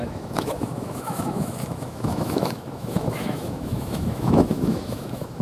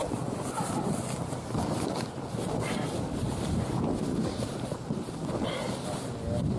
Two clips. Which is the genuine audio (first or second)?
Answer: second